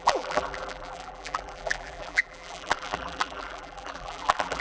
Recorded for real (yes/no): no